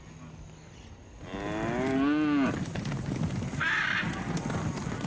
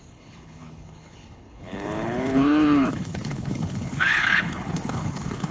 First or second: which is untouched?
first